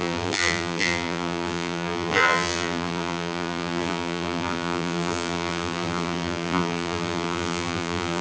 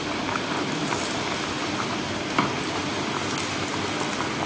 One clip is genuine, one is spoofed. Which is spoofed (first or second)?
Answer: first